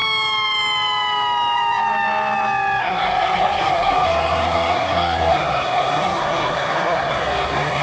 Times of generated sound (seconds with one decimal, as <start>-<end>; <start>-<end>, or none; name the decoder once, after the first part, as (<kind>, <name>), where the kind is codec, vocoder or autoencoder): 2.8-7.8 (codec, SNAC)